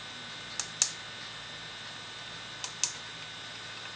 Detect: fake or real real